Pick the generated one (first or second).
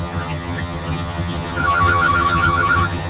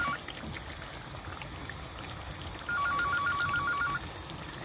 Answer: first